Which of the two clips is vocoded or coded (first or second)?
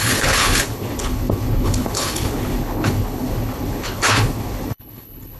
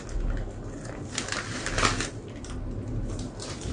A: first